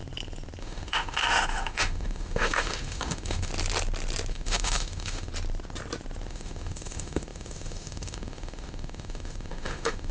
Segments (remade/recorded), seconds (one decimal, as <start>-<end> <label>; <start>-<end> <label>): 0.0-0.6 recorded; 0.6-3.5 remade; 3.5-4.3 recorded; 4.3-5.3 remade; 5.3-6.3 recorded; 6.3-10.1 remade

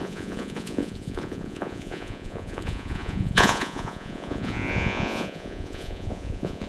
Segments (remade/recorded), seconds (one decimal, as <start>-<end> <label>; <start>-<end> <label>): 0.0-6.7 remade

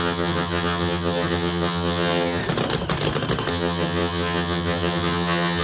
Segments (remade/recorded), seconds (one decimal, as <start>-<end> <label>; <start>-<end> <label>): 0.0-2.4 remade; 2.4-3.5 recorded; 3.5-5.6 remade

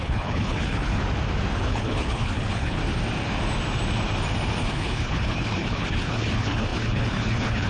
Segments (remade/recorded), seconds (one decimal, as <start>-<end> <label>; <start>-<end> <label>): 0.0-1.0 remade; 1.0-1.6 recorded; 1.6-2.8 remade; 2.8-4.6 recorded; 4.6-7.7 remade